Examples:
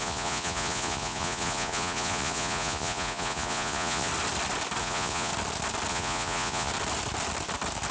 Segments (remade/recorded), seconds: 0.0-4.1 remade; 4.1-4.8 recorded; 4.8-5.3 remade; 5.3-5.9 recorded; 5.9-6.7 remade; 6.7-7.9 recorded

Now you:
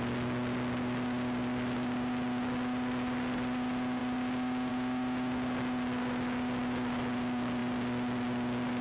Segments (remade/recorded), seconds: 0.0-8.8 recorded

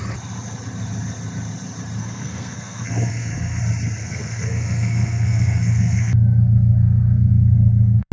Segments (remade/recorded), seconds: 0.0-2.0 recorded; 2.0-3.6 remade; 3.6-4.0 recorded; 4.0-8.1 remade

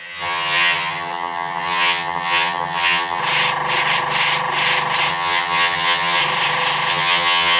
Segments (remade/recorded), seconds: 0.0-3.2 remade; 3.2-5.1 recorded; 5.1-6.2 remade; 6.2-6.9 recorded; 6.9-7.6 remade

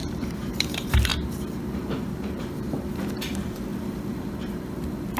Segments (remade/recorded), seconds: 0.0-1.1 remade; 1.1-1.7 recorded; 1.7-3.7 remade; 3.7-4.2 recorded; 4.2-5.2 remade

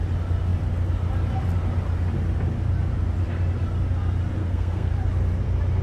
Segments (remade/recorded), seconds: 0.0-4.4 recorded; 4.4-4.9 remade; 4.9-5.8 recorded

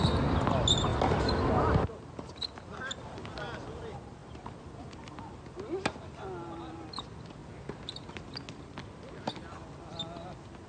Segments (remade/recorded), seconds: 0.0-10.7 recorded

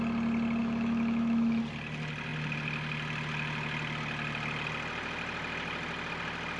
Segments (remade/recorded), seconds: 0.0-0.6 recorded; 0.6-1.6 remade; 1.6-6.6 recorded